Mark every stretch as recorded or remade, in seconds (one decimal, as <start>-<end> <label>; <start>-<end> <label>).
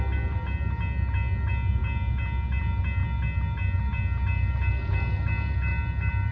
0.0-6.3 recorded